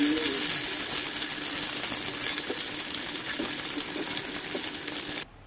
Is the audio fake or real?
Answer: real